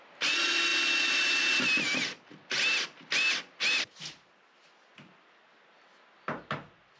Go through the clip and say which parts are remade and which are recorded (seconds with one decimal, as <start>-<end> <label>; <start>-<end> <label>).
0.0-7.0 recorded